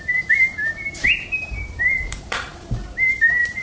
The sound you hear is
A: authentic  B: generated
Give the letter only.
B